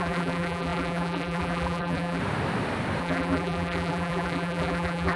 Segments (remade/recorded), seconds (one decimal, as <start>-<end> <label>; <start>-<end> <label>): 0.0-2.2 remade; 2.2-3.0 recorded; 3.0-5.2 remade